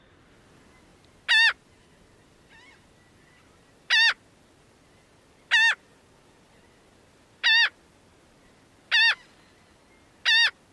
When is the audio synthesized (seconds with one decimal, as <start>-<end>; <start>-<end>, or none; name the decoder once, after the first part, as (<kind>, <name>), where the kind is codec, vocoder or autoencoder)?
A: none